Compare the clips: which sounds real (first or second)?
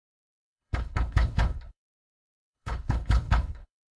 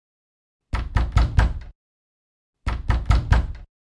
second